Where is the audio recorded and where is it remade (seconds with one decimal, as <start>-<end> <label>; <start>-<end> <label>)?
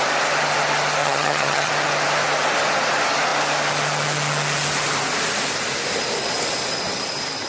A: 0.0-1.0 recorded; 1.0-1.7 remade; 1.7-7.5 recorded